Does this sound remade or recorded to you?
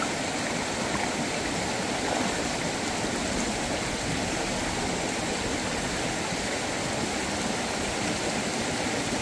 recorded